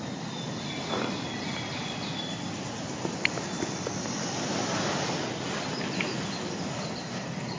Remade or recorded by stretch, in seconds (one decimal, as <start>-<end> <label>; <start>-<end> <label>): 0.0-7.6 recorded